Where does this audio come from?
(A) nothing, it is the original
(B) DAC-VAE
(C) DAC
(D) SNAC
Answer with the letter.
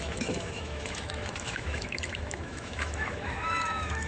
B